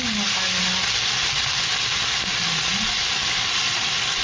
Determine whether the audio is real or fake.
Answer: real